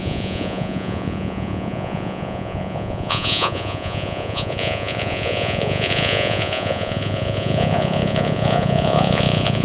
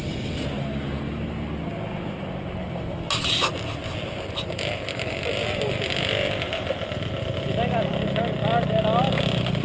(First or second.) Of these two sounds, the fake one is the first